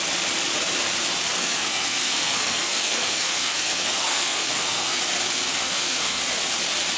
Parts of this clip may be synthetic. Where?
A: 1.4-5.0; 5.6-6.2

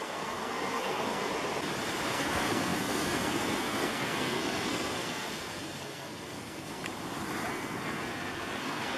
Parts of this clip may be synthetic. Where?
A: 0.0-1.3; 2.0-6.8; 7.5-9.0